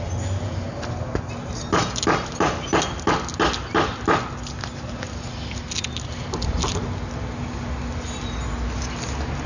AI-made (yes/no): no